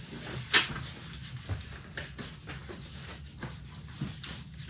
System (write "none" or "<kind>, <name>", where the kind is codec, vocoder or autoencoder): none